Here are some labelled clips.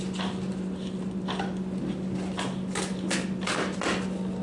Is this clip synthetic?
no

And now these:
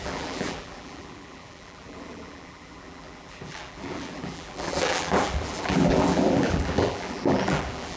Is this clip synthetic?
yes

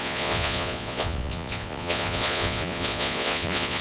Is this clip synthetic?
yes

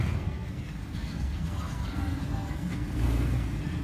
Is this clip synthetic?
yes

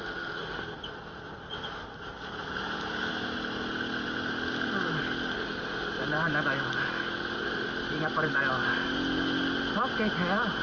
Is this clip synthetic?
no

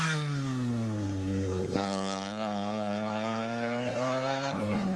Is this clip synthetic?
yes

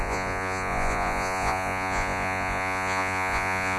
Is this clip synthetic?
yes